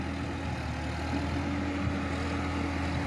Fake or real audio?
real